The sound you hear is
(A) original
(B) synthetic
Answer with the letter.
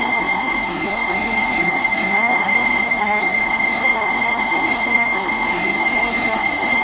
B